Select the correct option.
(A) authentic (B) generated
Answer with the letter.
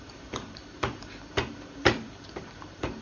B